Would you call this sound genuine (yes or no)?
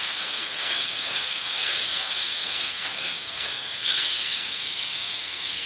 no